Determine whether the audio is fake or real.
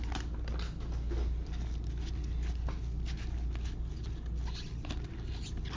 real